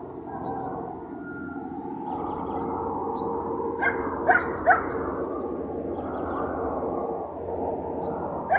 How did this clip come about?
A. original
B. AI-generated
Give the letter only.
A